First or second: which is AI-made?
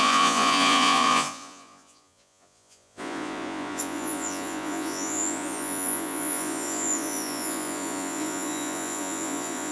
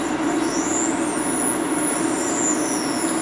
first